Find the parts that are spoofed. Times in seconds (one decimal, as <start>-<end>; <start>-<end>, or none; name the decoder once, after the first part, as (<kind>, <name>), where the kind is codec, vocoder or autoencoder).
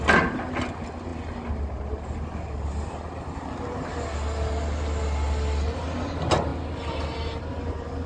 none